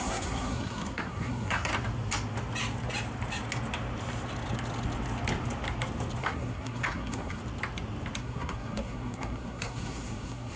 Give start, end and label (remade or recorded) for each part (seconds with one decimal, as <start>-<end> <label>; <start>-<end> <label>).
0.0-1.7 remade; 1.7-6.2 recorded; 6.2-7.4 remade; 7.4-8.2 recorded; 8.2-10.6 remade